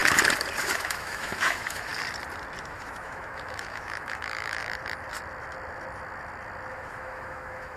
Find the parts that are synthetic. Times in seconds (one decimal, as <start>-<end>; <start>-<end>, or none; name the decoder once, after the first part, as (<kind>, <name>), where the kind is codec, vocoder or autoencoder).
0.6-1.9 (autoencoder, DAC-VAE); 2.6-4.6; 6.7-7.8